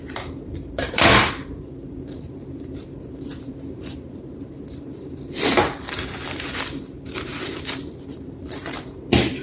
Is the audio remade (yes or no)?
yes